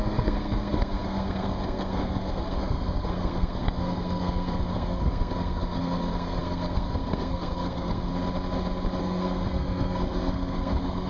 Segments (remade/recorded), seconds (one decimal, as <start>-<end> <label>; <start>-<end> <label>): 0.0-8.1 remade; 8.1-9.0 recorded; 9.0-11.1 remade